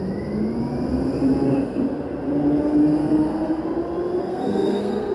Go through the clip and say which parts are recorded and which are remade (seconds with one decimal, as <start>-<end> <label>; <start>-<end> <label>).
0.0-3.0 recorded; 3.0-3.6 remade; 3.6-4.2 recorded; 4.2-5.1 remade